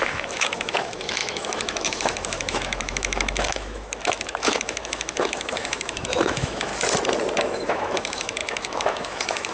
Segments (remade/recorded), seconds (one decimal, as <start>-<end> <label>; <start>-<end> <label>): 0.0-6.7 remade; 6.7-7.4 recorded; 7.4-9.5 remade